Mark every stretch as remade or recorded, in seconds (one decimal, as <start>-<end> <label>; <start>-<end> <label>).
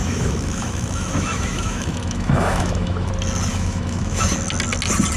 0.0-3.1 remade; 3.1-3.5 recorded; 3.5-4.2 remade; 4.2-5.2 recorded